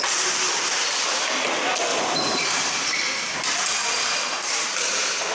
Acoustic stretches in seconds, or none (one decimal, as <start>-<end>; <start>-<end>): 0.0-1.9; 3.3-3.9